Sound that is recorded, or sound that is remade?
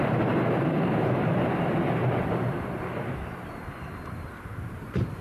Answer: remade